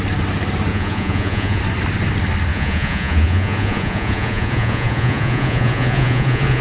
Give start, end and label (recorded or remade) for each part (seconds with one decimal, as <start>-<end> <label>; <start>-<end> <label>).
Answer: 0.0-0.7 recorded; 0.7-1.6 remade; 1.6-2.5 recorded; 2.5-6.6 remade